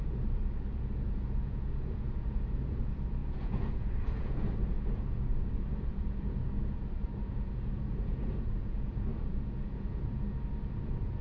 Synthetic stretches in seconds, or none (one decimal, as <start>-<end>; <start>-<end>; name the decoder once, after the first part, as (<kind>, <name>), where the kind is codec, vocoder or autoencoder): 0.0-11.2 (vocoder, Vocos)